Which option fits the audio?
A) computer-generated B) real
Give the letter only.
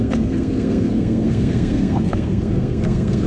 A